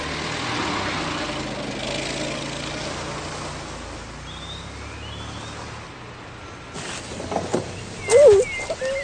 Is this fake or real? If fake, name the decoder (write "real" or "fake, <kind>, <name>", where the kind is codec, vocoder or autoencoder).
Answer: real